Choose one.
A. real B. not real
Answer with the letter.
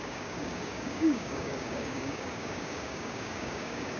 B